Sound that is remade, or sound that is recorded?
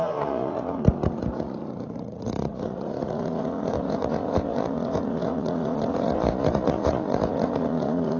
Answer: remade